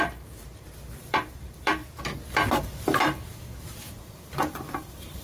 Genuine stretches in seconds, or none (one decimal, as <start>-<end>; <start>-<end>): 1.8-2.6